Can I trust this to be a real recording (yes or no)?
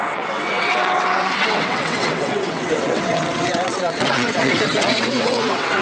no